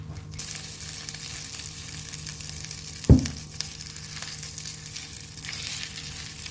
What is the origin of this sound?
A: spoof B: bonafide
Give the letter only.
B